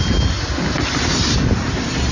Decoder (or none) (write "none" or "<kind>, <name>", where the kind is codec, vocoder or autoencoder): none